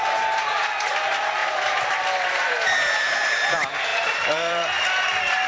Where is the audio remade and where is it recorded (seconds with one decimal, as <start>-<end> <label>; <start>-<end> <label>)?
0.0-1.4 recorded; 1.4-2.5 remade; 2.5-3.9 recorded; 3.9-5.0 remade; 5.0-5.5 recorded